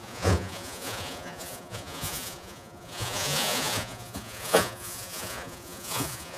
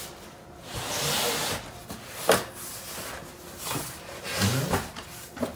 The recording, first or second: second